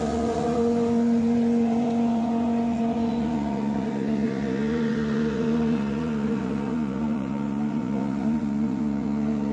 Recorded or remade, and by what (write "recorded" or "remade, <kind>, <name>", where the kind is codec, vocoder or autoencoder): remade, vocoder, Vocos